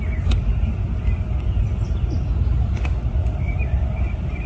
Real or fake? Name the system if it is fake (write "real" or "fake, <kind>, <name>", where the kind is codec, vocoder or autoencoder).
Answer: real